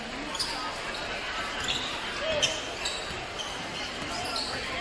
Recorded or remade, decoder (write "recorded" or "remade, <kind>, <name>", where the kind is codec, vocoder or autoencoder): recorded